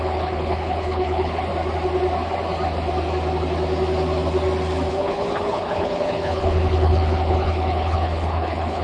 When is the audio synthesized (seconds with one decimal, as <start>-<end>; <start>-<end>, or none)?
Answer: 0.0-1.5; 4.9-8.8